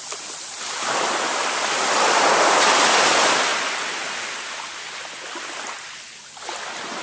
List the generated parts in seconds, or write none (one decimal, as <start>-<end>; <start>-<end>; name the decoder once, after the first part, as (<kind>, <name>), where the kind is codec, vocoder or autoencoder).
none